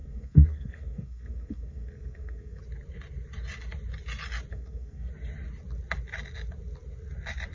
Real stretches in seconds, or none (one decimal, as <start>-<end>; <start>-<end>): 2.6-4.5; 5.1-7.5